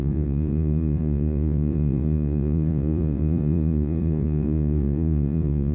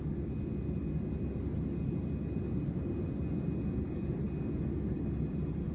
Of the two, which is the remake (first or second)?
first